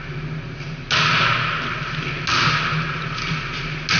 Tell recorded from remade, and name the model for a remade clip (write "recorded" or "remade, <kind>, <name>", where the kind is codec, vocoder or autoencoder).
recorded